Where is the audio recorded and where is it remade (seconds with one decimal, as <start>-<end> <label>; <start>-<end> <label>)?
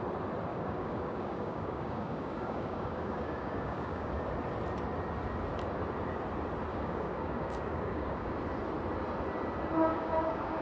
0.0-0.5 recorded; 0.5-4.1 remade; 4.1-6.7 recorded; 6.7-8.4 remade; 8.4-9.9 recorded; 9.9-10.6 remade